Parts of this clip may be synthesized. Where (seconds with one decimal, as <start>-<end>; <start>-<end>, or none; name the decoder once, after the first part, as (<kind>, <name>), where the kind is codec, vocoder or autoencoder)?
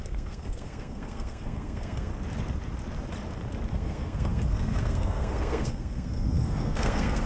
0.0-2.1 (codec, SNAC); 3.7-7.3